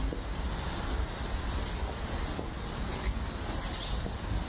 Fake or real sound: real